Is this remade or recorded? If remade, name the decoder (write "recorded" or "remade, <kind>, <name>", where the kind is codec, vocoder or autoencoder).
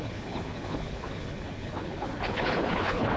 remade, codec, HILCodec